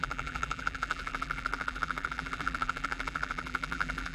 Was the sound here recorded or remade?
remade